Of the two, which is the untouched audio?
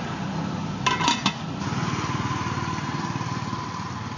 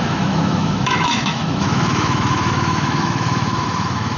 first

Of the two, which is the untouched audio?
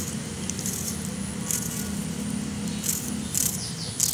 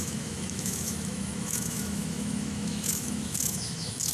first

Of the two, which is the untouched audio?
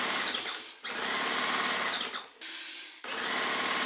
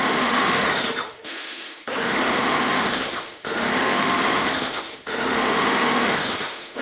first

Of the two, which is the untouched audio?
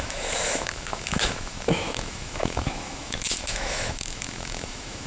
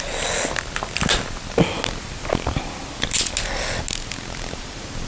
second